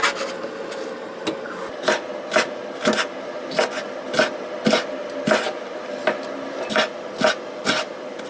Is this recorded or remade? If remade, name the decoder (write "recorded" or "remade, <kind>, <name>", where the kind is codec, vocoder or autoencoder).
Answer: recorded